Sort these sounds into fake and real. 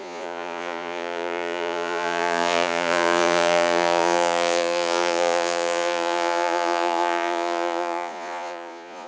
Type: fake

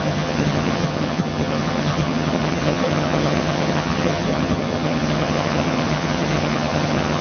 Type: fake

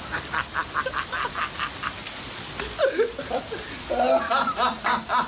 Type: real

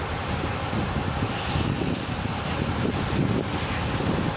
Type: real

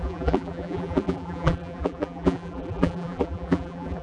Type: fake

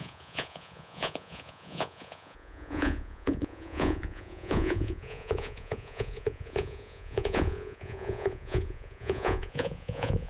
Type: fake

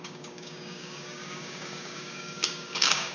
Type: fake